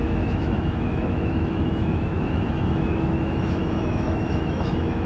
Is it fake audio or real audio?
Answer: fake